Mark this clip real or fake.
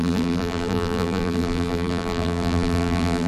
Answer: fake